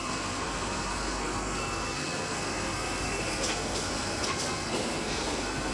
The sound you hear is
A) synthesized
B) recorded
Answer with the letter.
A